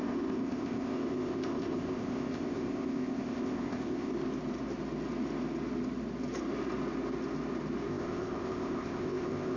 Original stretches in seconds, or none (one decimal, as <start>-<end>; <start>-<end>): 4.1-7.9